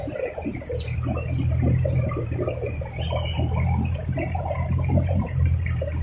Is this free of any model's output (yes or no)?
yes